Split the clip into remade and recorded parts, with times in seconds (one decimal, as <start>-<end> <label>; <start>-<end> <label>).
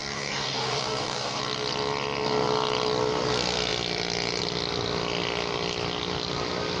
0.0-1.4 remade; 1.4-6.8 recorded